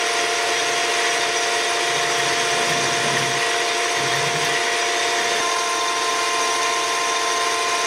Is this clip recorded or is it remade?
recorded